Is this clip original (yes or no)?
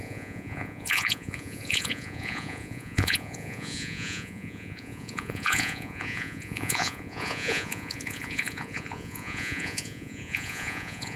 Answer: no